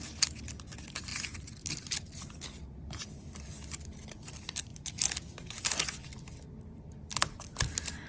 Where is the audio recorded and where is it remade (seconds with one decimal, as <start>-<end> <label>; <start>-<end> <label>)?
0.0-8.1 recorded